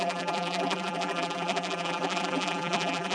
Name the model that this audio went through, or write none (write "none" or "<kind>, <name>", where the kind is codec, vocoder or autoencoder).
vocoder, BigVGAN v2